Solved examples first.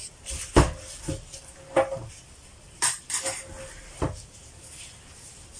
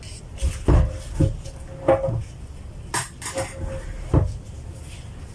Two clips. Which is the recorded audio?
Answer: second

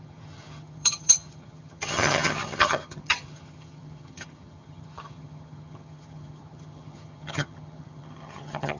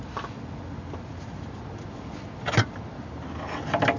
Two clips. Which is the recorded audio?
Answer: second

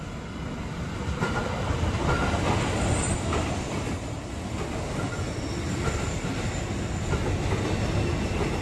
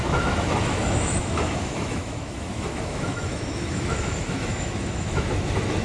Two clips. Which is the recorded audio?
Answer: first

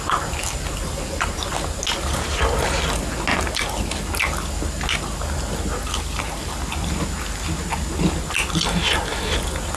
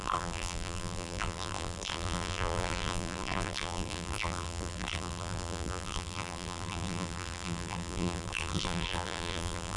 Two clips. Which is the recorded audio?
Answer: first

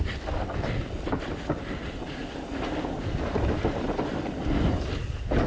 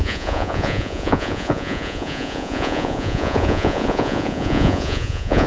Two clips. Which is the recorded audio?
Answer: first